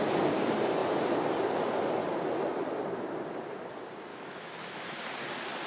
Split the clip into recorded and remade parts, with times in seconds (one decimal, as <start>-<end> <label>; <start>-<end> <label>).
0.0-4.1 recorded; 4.1-5.0 remade; 5.0-5.7 recorded